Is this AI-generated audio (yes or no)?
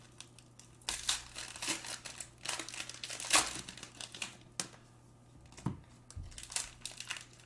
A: no